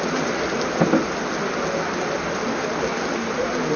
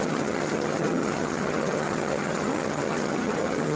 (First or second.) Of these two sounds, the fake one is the second